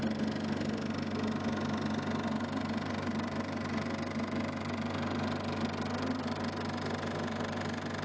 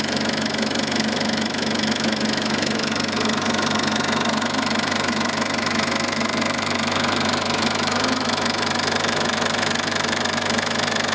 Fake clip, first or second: second